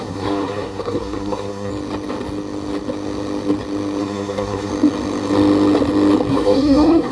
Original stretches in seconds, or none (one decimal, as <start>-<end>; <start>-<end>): 1.7-4.0; 4.7-6.3